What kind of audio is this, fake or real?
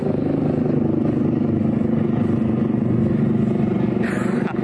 real